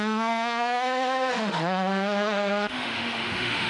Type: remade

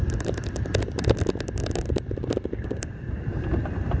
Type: recorded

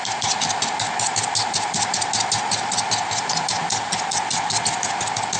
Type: recorded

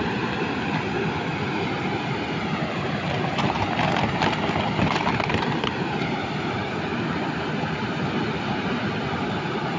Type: recorded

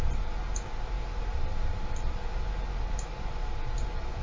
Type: recorded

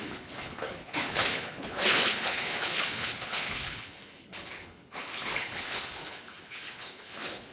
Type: remade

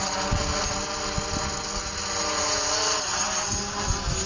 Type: recorded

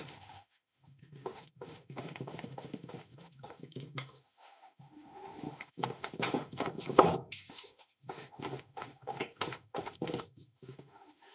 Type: remade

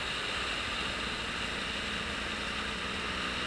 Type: recorded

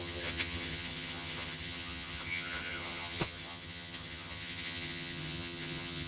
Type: remade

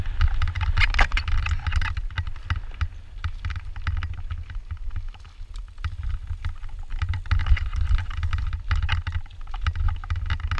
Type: recorded